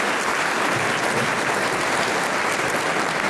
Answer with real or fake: real